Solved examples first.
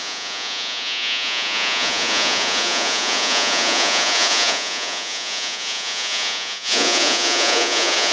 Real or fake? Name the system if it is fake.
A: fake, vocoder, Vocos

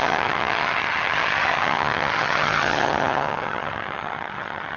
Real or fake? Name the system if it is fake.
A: fake, vocoder, HiFi-GAN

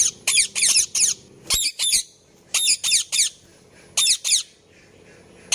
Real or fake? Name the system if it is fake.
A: real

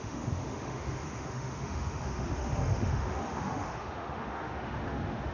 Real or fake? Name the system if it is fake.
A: fake, autoencoder, DAC-VAE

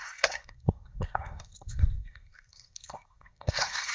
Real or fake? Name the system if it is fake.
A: fake, codec, SNAC